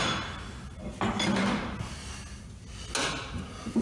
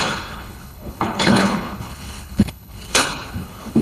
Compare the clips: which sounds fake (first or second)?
second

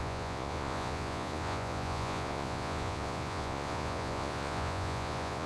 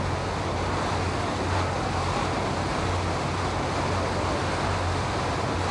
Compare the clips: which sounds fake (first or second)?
first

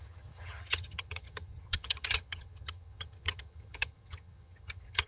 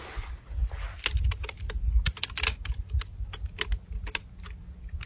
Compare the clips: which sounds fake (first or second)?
first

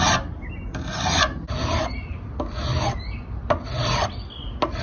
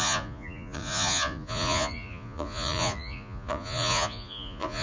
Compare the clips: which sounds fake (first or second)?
second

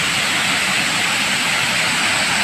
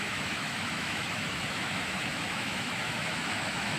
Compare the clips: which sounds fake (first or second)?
second